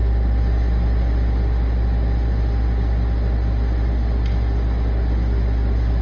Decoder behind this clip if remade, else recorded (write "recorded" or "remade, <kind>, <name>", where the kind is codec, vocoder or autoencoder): recorded